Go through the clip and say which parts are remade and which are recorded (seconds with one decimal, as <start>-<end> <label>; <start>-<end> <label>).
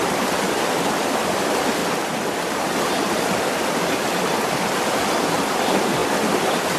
0.0-1.8 remade; 1.8-2.9 recorded; 2.9-6.8 remade